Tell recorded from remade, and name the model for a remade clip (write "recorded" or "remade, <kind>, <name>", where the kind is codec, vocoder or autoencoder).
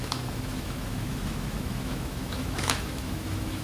remade, autoencoder, DAC-VAE